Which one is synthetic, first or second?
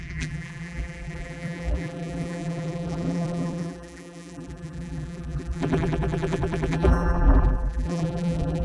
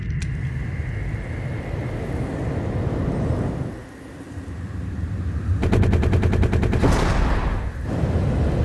first